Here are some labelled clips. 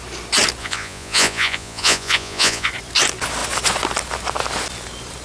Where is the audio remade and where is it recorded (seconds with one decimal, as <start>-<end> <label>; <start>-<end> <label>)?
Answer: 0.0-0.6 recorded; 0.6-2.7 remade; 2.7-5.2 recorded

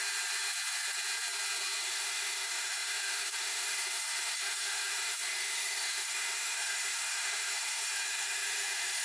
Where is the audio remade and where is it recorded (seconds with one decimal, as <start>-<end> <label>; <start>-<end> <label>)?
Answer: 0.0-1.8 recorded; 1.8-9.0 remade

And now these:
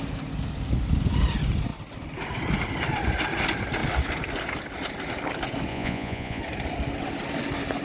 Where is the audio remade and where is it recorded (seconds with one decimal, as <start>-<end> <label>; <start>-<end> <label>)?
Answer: 0.0-5.7 recorded; 5.7-6.4 remade; 6.4-7.8 recorded

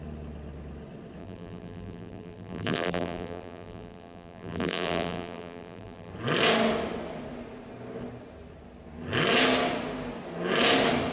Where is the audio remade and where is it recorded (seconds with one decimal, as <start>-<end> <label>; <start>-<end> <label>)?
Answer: 0.0-1.2 recorded; 1.2-6.1 remade; 6.1-11.1 recorded